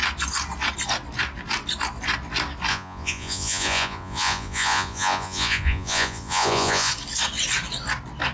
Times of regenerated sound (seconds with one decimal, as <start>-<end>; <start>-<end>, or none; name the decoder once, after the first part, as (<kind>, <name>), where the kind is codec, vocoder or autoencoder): 2.7-6.9 (vocoder, Vocos)